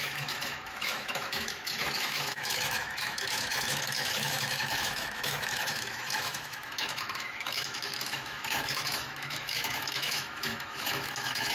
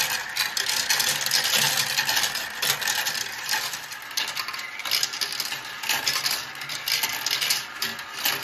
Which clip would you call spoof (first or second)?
first